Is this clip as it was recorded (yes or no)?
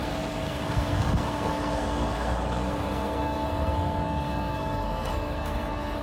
no